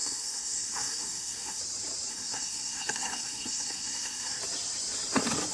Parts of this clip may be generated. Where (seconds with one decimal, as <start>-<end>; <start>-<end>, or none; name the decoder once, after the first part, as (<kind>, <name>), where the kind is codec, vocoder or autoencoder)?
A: 0.0-1.6 (codec, SNAC); 2.1-4.4

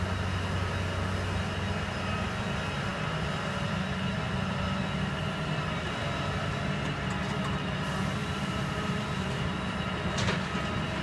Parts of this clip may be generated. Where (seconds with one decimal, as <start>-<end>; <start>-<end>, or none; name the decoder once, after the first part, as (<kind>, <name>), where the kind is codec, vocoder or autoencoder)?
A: 8.2-9.8 (vocoder, BigVGAN v2)

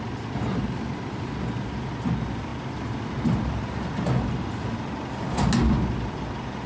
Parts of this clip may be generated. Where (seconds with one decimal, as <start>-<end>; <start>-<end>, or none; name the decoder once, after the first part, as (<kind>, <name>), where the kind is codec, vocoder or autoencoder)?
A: 0.5-1.3 (vocoder, BigVGAN v2)

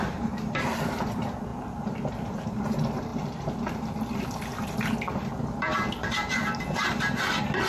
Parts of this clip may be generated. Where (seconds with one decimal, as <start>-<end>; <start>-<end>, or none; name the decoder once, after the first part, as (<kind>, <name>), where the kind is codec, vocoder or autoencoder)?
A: 0.0-1.5 (vocoder, BigVGAN v2); 2.1-7.7